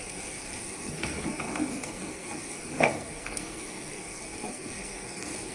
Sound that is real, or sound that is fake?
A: fake